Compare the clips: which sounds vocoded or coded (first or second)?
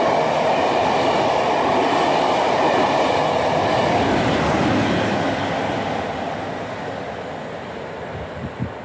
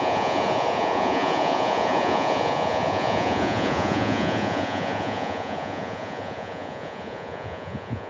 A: second